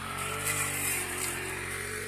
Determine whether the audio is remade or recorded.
remade